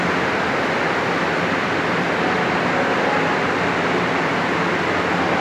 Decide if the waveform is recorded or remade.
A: recorded